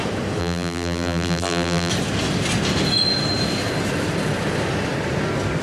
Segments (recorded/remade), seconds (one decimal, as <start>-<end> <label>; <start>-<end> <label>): 0.0-0.4 recorded; 0.4-1.9 remade; 1.9-5.6 recorded